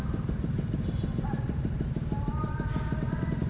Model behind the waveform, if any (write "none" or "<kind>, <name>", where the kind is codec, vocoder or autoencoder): vocoder, BigVGAN v2